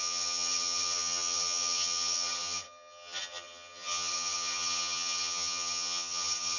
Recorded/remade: remade